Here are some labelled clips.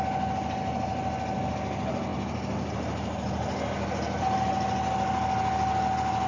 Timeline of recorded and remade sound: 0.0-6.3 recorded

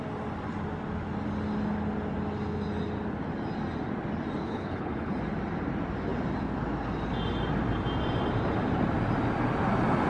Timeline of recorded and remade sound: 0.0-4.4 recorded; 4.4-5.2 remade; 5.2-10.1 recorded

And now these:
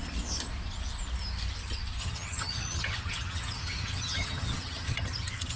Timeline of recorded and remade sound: 0.0-2.0 recorded; 2.0-5.6 remade